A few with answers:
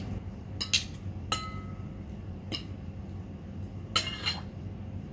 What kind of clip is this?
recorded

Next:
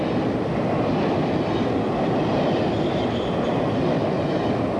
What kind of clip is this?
recorded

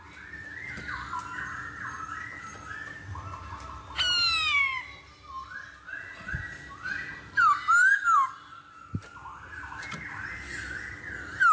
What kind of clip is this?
recorded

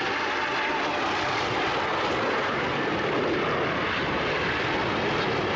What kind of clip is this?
recorded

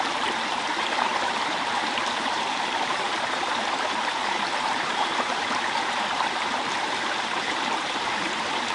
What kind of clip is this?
remade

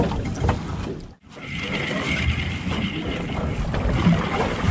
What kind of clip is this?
recorded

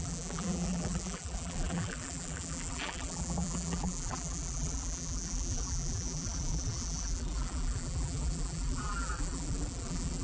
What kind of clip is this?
remade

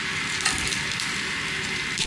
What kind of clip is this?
remade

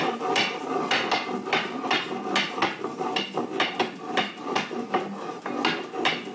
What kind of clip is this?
recorded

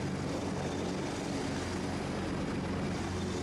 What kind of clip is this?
recorded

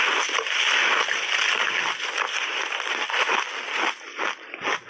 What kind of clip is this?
recorded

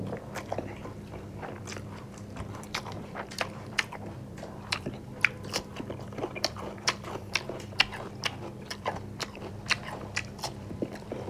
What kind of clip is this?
remade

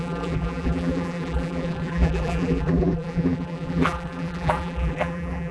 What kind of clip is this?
remade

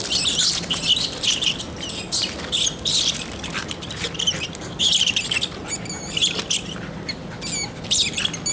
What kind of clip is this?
recorded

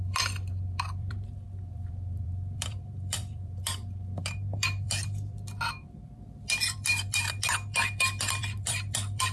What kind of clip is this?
remade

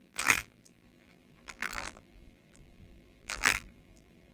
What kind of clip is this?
remade